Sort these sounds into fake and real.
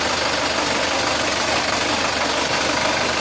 real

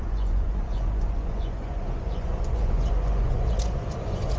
fake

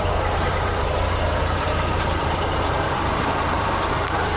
fake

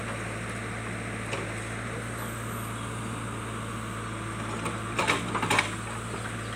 real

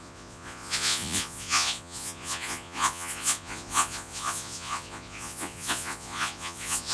fake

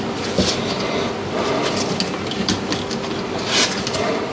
real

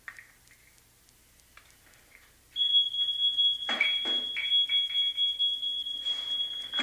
real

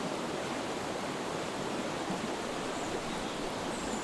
real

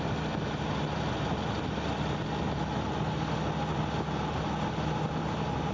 real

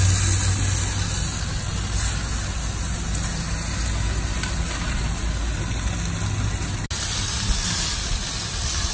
real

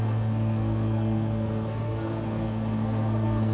fake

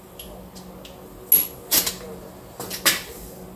real